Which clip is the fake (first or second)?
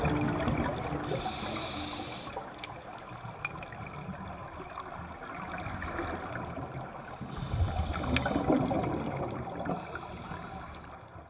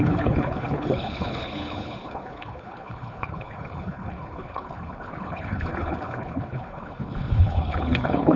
second